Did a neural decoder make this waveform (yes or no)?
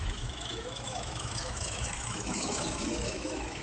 yes